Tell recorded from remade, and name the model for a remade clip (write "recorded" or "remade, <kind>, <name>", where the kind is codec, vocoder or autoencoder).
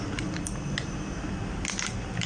recorded